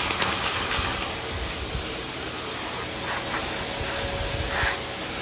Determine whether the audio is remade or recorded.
recorded